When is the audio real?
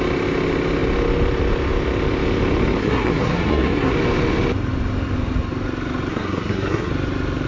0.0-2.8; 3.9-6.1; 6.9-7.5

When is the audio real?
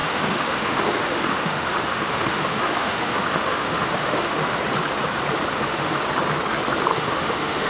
4.6-5.5; 6.0-6.9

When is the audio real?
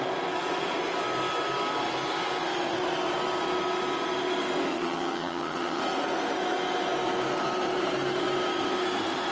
0.0-4.7; 5.8-9.3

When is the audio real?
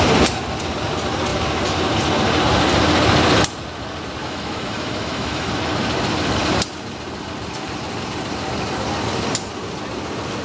0.0-4.2; 5.5-10.4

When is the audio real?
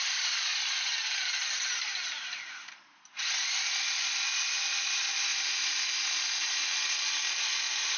0.0-8.0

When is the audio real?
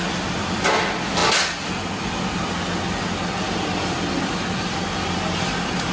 0.0-5.9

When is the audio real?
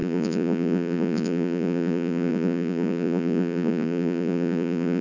none